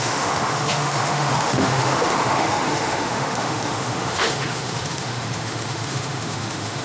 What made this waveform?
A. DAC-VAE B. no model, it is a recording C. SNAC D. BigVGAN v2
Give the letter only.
A